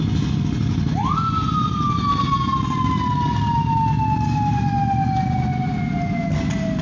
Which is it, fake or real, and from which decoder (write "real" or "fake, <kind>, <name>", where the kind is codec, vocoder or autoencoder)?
real